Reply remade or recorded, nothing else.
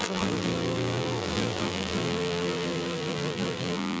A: remade